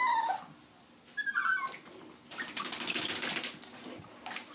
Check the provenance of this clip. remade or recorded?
recorded